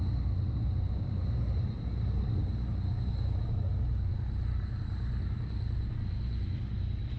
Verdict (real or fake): real